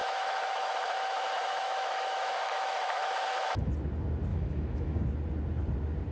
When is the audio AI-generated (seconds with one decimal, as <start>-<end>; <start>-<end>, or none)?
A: 0.0-3.7; 4.3-5.0